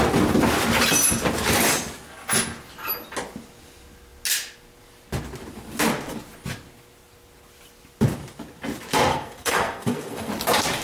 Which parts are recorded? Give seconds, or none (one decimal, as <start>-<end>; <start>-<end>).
0.0-9.1; 10.3-10.8